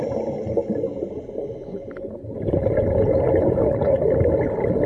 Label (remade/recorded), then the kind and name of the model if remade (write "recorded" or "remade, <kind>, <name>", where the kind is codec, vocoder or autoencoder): recorded